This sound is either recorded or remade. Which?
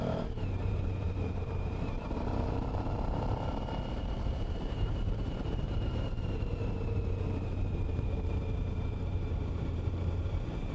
remade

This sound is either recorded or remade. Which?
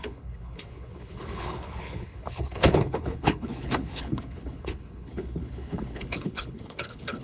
remade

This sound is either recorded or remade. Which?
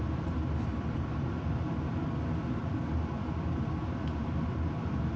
remade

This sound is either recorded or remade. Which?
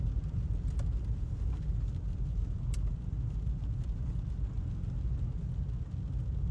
recorded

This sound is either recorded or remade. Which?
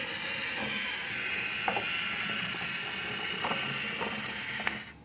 recorded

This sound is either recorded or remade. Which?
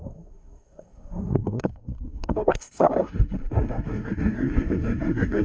remade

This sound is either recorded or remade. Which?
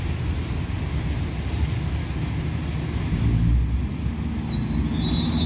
recorded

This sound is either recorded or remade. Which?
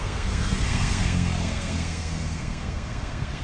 remade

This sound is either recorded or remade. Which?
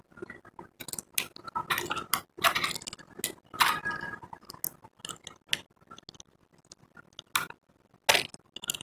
recorded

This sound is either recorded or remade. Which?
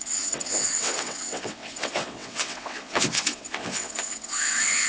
remade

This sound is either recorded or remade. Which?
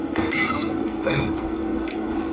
remade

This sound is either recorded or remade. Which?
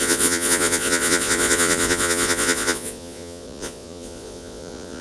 remade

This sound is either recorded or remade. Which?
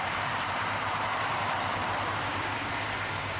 remade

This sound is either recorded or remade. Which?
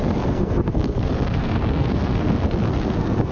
remade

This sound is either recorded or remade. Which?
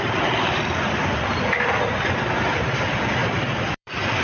remade